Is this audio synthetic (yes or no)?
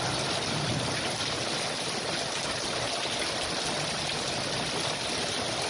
no